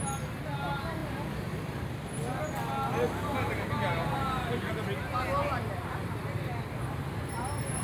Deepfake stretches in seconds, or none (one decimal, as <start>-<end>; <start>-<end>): none